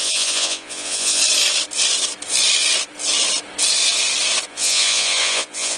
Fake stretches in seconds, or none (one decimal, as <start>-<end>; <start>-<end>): 0.0-1.2; 4.5-5.8